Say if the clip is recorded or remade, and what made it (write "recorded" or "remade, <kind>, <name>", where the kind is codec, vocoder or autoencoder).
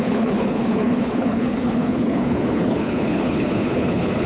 remade, codec, HILCodec